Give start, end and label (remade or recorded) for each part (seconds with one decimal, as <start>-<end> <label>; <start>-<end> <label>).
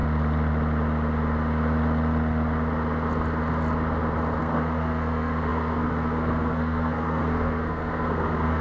0.0-4.4 recorded; 4.4-8.6 remade